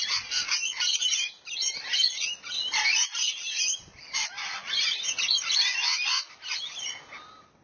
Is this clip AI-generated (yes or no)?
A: no